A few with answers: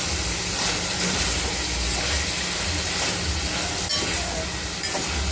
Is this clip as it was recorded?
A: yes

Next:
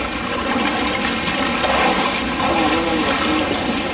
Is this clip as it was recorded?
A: yes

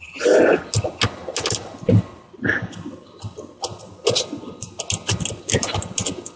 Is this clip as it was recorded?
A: yes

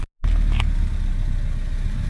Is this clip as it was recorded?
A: yes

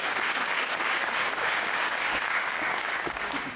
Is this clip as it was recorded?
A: no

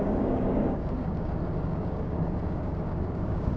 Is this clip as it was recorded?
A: no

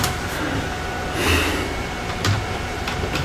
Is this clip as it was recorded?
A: yes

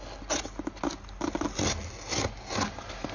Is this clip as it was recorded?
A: yes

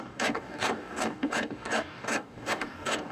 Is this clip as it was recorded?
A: no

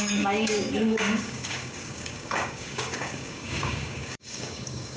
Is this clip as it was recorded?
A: no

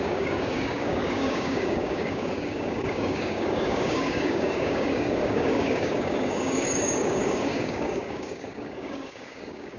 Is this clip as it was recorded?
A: no